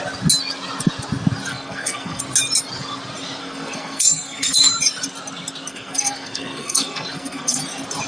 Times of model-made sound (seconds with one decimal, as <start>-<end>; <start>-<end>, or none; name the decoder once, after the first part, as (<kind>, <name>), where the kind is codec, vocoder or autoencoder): 1.5-2.2 (codec, SNAC); 3.4-4.7; 5.7-7.6

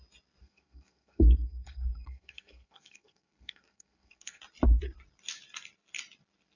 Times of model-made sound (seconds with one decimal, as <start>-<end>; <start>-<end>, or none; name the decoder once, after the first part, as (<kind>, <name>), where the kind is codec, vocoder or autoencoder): 0.4-4.4 (codec, SNAC)